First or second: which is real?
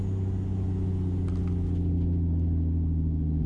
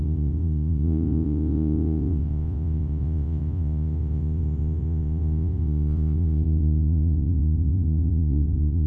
first